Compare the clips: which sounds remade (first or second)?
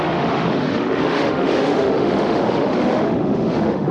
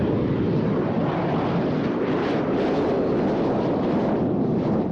first